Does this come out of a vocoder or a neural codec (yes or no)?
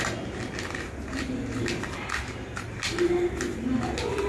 no